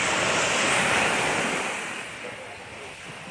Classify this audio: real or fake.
real